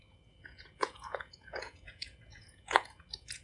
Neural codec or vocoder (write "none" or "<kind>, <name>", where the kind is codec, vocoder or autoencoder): vocoder, Vocos